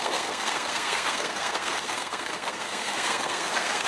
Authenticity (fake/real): fake